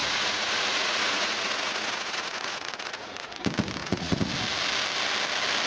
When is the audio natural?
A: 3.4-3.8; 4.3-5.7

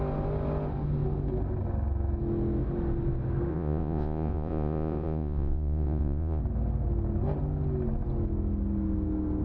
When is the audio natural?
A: 0.0-3.5; 6.4-9.4

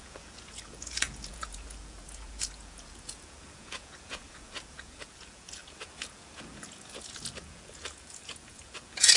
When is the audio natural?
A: none

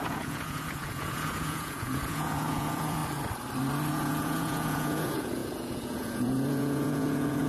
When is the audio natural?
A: 3.0-3.9

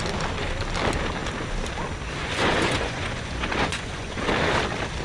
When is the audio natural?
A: 0.0-2.2; 4.3-5.0